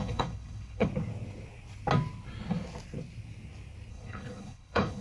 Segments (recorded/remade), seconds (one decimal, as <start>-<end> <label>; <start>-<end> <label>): 0.0-0.9 remade; 0.9-3.9 recorded; 3.9-5.0 remade